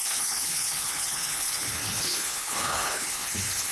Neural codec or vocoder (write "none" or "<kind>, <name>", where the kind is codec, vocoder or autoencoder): codec, HILCodec